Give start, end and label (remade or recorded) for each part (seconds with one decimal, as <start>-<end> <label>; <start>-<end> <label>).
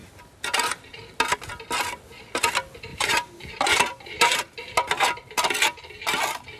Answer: 0.0-1.0 remade; 1.0-2.9 recorded; 2.9-4.4 remade; 4.4-6.6 recorded